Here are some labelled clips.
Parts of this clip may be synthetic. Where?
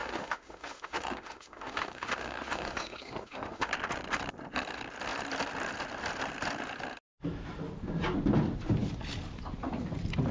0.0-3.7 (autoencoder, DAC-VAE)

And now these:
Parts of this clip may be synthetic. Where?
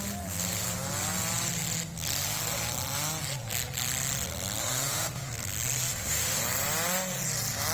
4.6-5.3 (autoencoder, DAC-VAE); 5.9-6.4